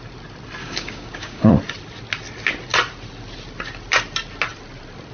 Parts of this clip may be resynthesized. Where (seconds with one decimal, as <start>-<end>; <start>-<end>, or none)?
0.6-1.5